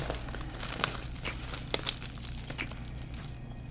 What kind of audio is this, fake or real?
real